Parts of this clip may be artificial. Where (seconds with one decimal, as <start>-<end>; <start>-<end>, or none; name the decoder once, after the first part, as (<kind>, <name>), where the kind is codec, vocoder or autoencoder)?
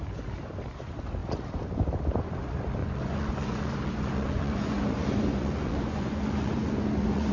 2.8-7.3 (vocoder, Vocos)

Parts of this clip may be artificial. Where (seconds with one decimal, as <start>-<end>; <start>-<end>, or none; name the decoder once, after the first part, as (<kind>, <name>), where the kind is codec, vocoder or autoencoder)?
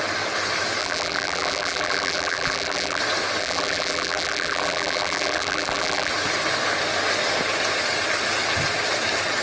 0.8-3.0 (vocoder, BigVGAN v2); 3.4-6.1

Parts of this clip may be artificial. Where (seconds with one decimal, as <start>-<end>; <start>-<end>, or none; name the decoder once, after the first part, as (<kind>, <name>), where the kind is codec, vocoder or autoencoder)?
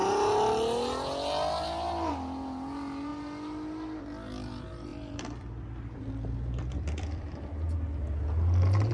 4.9-7.4 (vocoder, BigVGAN v2)